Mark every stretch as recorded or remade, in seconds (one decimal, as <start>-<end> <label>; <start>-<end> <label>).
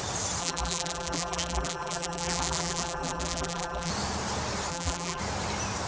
0.0-0.4 recorded; 0.4-3.9 remade; 3.9-4.7 recorded; 4.7-5.2 remade; 5.2-5.9 recorded